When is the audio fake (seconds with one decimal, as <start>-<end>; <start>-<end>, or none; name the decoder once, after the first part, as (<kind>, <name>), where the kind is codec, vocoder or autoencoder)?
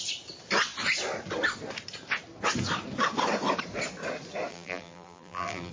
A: 4.5-5.7 (vocoder, BigVGAN v2)